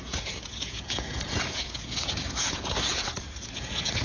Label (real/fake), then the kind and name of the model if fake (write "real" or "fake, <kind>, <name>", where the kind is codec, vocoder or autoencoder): fake, vocoder, Vocos